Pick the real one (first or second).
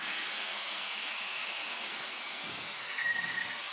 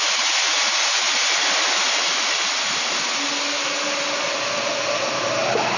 second